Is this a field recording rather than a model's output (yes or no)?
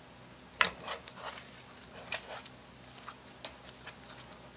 yes